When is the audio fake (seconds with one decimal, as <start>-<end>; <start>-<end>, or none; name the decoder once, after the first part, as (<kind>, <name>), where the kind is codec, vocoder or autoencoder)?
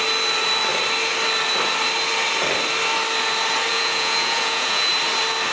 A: 3.7-4.9 (vocoder, Vocos)